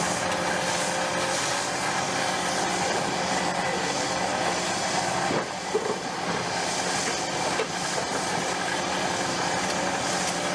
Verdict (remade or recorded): recorded